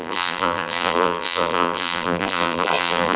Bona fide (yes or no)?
no